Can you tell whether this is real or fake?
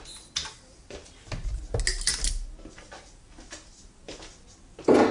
real